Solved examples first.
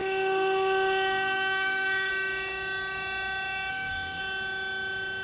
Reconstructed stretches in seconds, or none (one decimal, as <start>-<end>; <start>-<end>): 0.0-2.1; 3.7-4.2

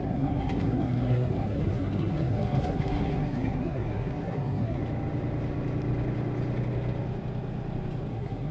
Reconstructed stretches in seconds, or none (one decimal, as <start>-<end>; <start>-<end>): 0.0-4.8; 8.1-8.5

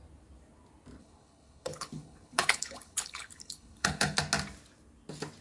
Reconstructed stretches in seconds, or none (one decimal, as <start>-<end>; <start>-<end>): 1.0-4.2

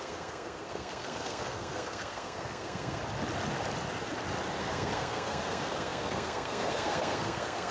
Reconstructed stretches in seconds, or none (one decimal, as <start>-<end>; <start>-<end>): 0.0-3.0; 4.6-7.7

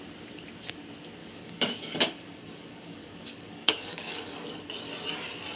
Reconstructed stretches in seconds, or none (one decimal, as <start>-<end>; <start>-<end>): 1.2-4.6